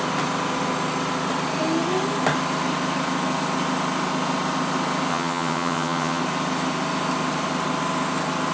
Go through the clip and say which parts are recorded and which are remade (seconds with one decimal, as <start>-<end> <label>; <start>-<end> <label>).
0.0-5.1 recorded; 5.1-6.2 remade; 6.2-8.5 recorded